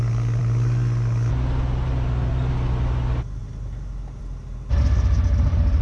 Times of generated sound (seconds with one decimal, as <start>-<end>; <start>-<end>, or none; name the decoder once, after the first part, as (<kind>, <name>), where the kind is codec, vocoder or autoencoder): none